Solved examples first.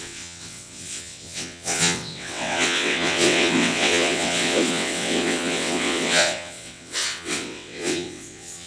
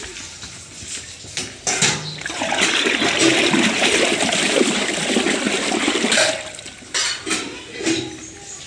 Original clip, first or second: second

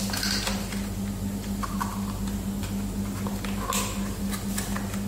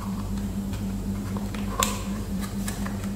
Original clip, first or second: first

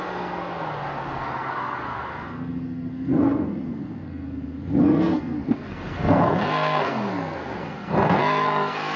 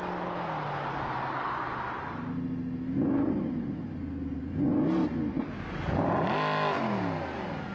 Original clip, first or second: second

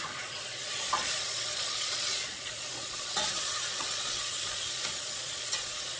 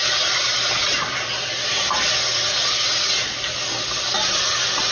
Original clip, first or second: second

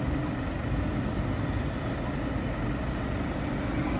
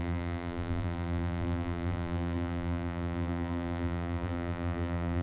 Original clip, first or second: first